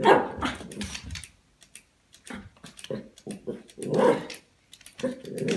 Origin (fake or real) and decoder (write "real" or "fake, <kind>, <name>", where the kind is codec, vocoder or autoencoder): real